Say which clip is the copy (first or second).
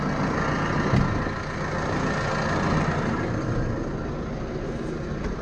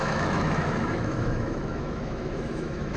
second